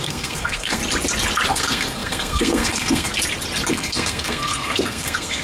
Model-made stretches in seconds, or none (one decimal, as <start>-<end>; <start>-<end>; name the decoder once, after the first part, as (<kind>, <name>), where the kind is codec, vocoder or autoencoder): 0.0-0.8 (codec, SNAC); 1.5-3.1; 3.7-5.4

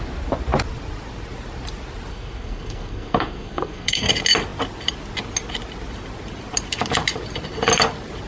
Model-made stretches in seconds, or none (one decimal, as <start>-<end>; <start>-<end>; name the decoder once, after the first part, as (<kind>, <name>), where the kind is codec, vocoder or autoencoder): 2.1-4.1 (codec, SNAC)

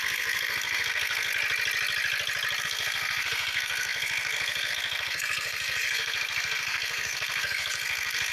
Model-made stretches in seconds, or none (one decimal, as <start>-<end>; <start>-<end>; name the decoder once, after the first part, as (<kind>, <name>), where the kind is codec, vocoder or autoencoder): 0.0-1.3 (codec, SNAC); 2.6-8.3